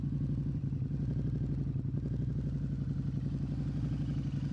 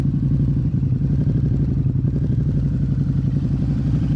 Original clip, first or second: first